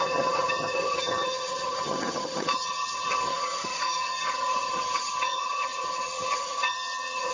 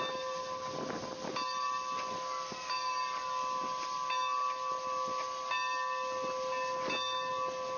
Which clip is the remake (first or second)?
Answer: first